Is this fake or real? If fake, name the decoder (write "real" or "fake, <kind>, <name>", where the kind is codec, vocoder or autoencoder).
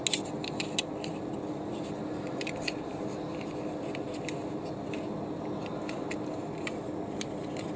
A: real